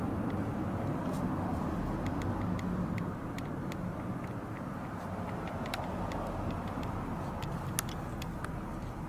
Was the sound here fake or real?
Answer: real